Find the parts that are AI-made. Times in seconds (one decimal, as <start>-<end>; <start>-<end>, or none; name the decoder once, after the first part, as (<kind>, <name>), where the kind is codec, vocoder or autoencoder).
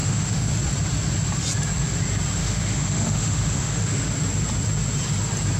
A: 0.0-0.5 (autoencoder, DAC-VAE); 2.4-4.1